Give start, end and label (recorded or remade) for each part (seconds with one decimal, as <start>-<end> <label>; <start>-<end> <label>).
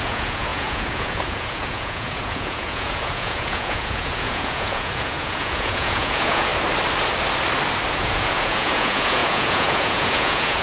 0.0-6.5 remade; 6.5-7.9 recorded; 7.9-10.6 remade